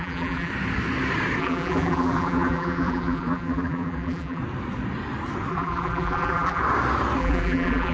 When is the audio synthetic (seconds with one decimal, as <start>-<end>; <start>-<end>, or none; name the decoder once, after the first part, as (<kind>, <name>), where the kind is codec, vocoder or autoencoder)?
0.0-0.5 (vocoder, BigVGAN v2); 1.4-4.4; 5.5-6.6; 7.2-7.9